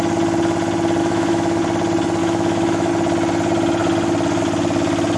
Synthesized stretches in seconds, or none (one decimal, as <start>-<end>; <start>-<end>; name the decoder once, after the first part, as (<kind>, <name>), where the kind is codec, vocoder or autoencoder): 1.0-1.6 (autoencoder, DAC-VAE); 2.2-2.9